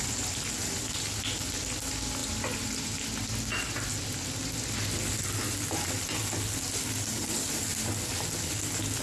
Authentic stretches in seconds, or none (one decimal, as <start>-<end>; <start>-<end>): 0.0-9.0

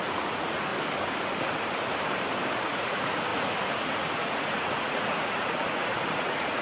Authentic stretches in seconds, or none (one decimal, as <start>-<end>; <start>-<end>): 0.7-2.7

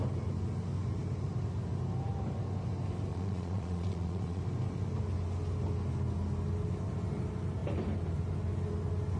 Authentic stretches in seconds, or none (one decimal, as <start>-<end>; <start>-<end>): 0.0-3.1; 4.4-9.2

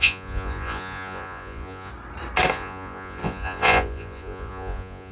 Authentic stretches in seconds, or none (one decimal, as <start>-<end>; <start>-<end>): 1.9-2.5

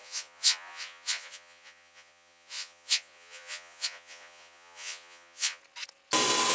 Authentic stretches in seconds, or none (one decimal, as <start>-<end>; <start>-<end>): 5.6-6.5

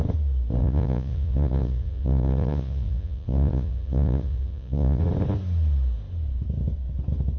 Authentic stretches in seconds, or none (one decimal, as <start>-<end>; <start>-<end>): 0.0-0.6; 5.0-7.4

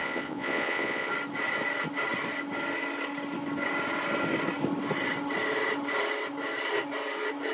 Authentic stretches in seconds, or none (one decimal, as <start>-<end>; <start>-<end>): 1.1-7.5

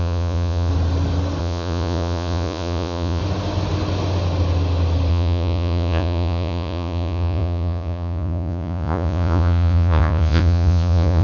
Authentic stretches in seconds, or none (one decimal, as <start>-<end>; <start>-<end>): 0.7-1.4; 3.2-5.1